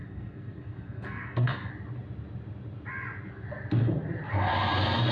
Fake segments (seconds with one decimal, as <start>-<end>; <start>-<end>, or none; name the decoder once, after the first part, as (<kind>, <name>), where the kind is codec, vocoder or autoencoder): 0.0-1.7 (codec, SNAC)